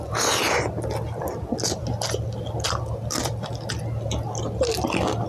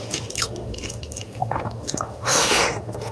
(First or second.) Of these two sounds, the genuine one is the first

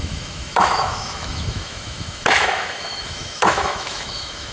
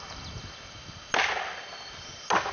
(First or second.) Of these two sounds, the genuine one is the second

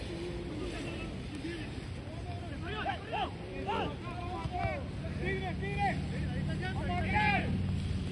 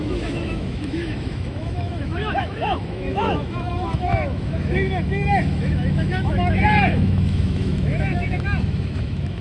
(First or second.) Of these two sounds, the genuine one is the first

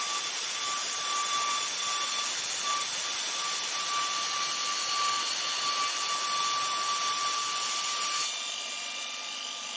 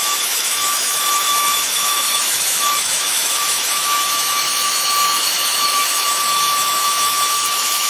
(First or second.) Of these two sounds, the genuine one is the first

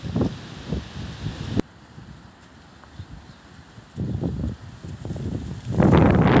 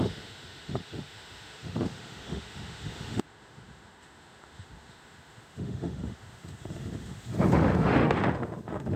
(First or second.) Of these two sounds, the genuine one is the first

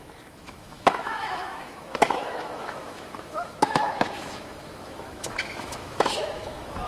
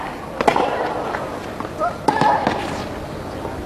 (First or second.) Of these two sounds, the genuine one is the second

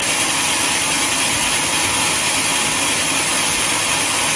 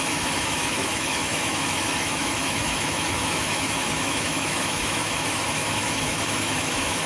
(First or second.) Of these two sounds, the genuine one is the first